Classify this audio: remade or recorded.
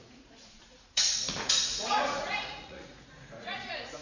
remade